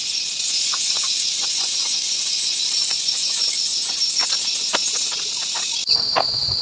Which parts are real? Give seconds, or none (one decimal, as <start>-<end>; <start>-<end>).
4.0-6.6